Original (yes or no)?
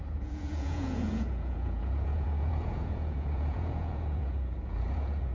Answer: no